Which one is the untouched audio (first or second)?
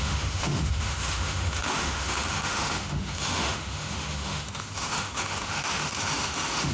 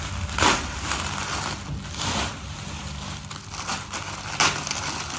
second